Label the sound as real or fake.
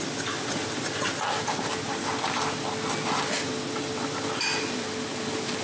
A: real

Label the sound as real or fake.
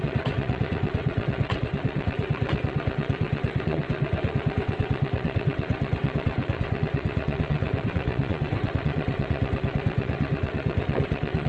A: fake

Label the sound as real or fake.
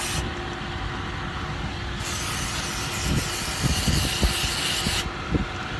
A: real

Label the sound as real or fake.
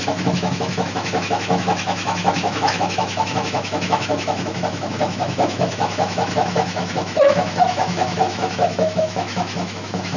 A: fake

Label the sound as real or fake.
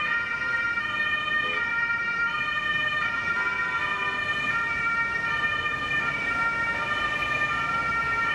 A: real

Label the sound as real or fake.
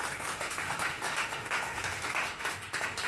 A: fake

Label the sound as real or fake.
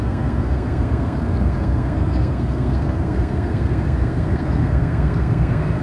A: fake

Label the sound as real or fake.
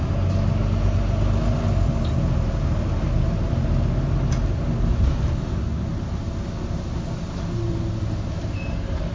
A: real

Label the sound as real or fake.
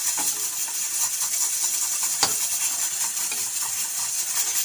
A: real